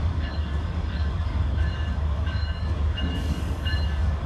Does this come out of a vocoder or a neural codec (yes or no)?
yes